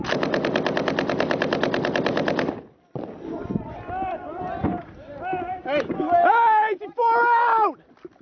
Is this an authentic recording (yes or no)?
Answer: no